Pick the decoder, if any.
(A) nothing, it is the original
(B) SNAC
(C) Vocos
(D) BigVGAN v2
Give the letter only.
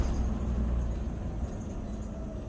A